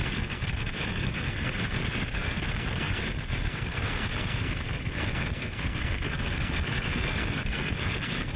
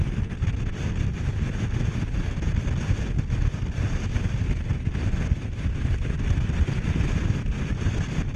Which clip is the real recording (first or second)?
second